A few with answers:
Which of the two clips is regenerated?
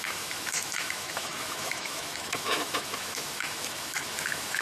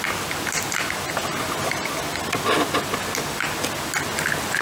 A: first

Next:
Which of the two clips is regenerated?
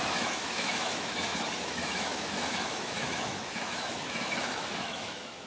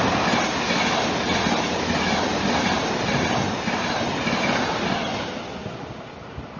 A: first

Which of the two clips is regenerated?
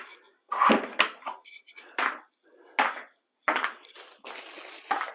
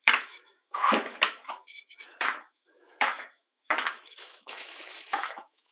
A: second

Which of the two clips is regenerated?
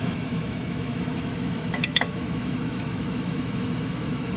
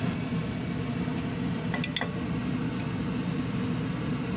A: first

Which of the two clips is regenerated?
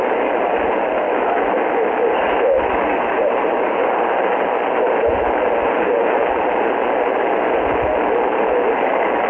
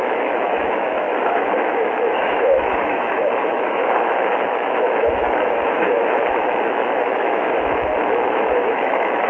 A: second